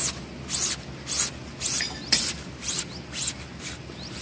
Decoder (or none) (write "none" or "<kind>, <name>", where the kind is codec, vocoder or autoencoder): none